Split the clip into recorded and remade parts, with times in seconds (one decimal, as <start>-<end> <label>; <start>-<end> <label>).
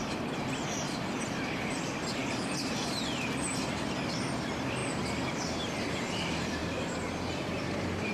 0.0-6.6 remade; 6.6-7.6 recorded; 7.6-8.1 remade